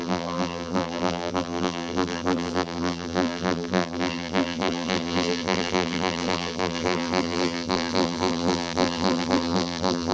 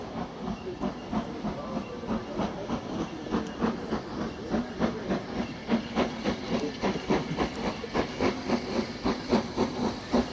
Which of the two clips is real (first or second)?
second